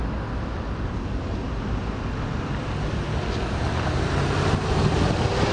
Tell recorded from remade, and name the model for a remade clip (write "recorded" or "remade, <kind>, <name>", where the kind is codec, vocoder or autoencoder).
recorded